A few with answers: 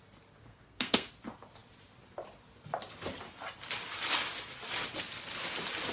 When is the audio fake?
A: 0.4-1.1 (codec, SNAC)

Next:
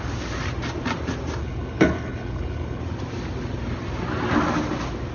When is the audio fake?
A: 1.4-2.8 (codec, HILCodec)

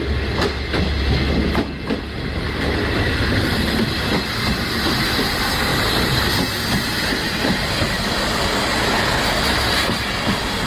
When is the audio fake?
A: none

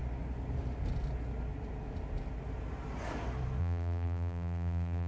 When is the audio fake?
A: 3.6-5.1 (vocoder, BigVGAN v2)

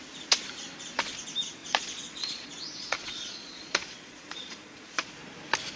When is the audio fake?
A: 1.6-5.1 (vocoder, Vocos)

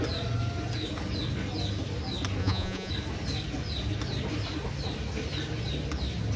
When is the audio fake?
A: 2.4-2.9 (vocoder, Vocos)

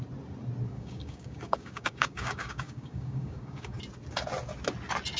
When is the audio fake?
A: 0.7-3.8 (codec, DAC)